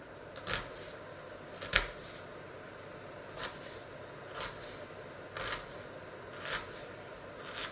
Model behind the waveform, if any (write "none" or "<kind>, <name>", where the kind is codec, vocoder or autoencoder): none